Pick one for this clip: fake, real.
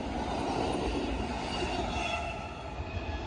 real